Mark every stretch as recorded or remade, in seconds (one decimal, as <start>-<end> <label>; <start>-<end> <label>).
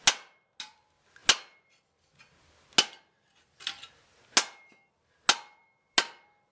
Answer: 0.0-6.5 recorded